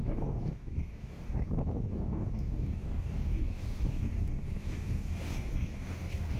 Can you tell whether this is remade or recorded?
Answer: remade